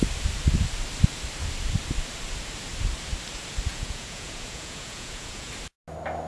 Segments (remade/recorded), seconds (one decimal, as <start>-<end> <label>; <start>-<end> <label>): 0.0-3.7 recorded; 3.7-5.5 remade; 5.5-6.3 recorded